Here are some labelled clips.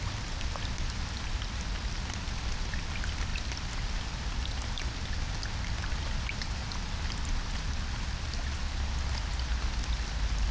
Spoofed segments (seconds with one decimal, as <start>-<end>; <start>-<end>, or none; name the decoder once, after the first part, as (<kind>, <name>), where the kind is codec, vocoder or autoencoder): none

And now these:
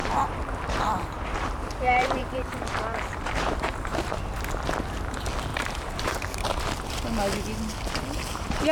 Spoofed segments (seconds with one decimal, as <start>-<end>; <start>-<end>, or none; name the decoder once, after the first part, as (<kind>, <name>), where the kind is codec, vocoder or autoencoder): 0.0-4.5 (vocoder, BigVGAN v2); 5.5-6.6

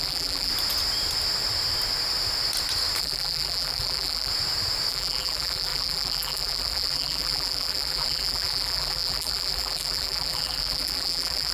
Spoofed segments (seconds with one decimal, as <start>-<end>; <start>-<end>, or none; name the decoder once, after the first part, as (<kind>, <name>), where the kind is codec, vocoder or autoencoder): 0.0-0.5 (vocoder, BigVGAN v2); 3.0-4.3; 4.9-11.5

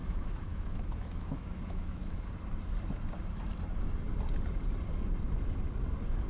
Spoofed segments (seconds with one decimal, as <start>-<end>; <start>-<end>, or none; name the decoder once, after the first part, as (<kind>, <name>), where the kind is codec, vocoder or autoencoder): 0.0-2.3 (autoencoder, DAC-VAE)

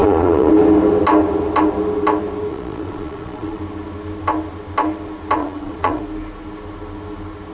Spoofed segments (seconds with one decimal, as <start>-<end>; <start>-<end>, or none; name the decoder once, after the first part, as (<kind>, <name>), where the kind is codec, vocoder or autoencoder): 0.0-0.5 (vocoder, Vocos); 2.5-3.6; 5.4-6.0

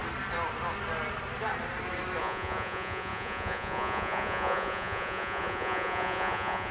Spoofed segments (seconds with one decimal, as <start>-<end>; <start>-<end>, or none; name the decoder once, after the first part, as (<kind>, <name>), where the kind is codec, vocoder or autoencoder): 2.2-6.7 (vocoder, Vocos)